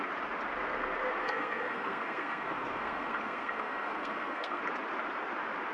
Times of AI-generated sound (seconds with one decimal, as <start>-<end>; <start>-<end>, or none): 1.2-4.6

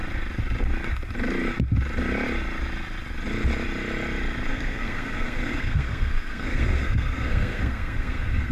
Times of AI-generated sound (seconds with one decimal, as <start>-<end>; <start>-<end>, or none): 4.5-8.5

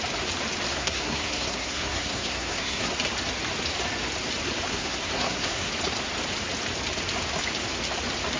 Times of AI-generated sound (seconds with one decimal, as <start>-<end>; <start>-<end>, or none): 0.7-2.9; 4.7-5.7

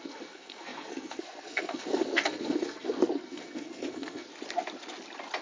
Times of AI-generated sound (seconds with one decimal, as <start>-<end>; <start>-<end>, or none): 0.0-4.3

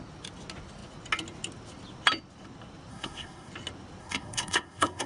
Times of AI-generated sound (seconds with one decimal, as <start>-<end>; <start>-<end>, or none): 2.9-3.5; 4.0-5.1